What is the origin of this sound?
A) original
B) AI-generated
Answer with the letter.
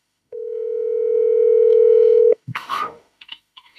B